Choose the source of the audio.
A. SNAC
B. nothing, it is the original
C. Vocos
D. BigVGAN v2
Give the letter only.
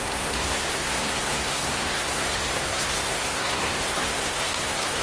A